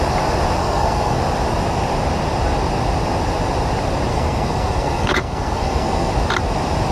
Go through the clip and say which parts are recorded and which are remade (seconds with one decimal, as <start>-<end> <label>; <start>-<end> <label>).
0.0-0.6 recorded; 0.6-1.2 remade; 1.2-4.1 recorded; 4.1-6.1 remade; 6.1-6.9 recorded